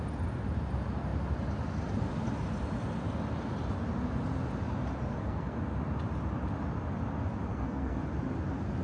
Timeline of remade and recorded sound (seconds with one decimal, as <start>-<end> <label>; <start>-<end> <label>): 0.0-5.1 recorded; 5.1-5.6 remade; 5.6-7.5 recorded; 7.5-8.0 remade; 8.0-8.8 recorded